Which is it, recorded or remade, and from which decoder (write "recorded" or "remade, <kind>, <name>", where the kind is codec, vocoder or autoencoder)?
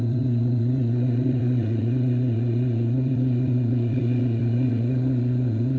remade, vocoder, Vocos